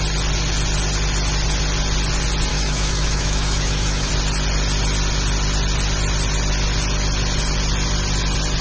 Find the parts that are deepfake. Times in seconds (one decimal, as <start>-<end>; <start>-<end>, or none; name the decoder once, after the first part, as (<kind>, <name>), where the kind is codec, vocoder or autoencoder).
2.5-4.1 (autoencoder, DAC-VAE)